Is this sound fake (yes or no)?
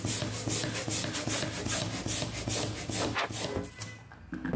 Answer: no